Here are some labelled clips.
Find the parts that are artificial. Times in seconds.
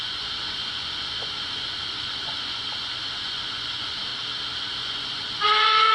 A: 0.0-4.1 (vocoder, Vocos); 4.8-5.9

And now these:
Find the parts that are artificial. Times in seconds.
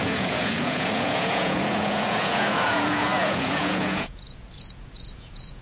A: 0.0-5.6 (vocoder, Vocos)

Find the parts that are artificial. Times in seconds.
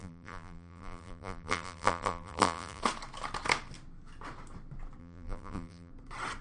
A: 0.0-2.8 (vocoder, BigVGAN v2); 5.0-5.9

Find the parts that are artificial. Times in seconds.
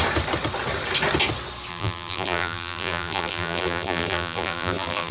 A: 1.7-5.1 (vocoder, BigVGAN v2)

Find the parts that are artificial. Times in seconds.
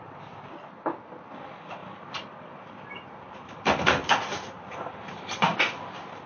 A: 1.8-5.6 (vocoder, BigVGAN v2)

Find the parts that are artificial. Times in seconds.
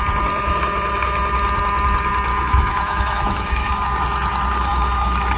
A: 2.3-3.7 (autoencoder, DAC-VAE)